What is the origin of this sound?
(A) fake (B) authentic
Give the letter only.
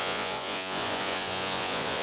A